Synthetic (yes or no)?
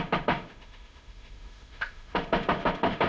yes